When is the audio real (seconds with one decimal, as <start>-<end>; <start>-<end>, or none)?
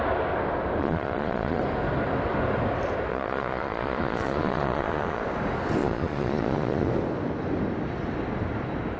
0.0-0.8; 1.6-3.1; 5.2-5.8; 6.9-9.0